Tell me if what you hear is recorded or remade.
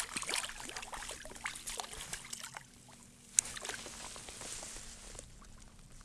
recorded